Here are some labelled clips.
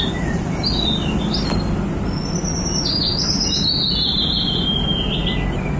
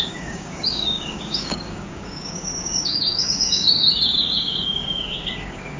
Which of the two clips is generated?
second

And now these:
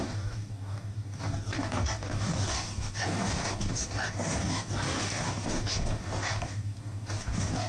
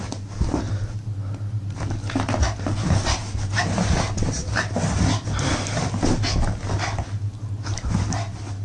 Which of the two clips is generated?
first